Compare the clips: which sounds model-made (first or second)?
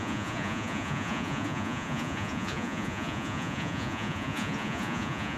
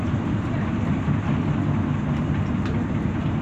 first